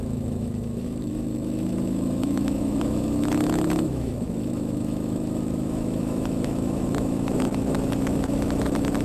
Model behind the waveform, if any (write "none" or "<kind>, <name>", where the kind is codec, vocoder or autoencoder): autoencoder, DAC-VAE